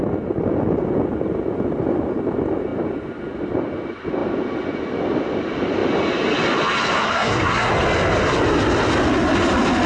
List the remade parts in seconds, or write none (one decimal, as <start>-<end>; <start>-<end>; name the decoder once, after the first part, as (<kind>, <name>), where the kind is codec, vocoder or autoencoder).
7.0-7.7 (codec, SNAC)